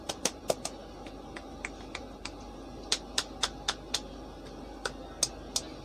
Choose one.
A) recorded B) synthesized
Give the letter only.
A